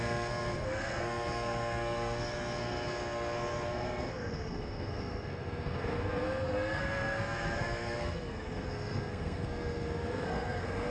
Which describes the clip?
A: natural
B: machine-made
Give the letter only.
B